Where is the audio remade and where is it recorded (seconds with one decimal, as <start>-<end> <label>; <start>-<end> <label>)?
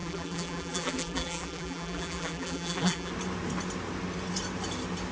0.0-3.1 remade; 3.1-5.1 recorded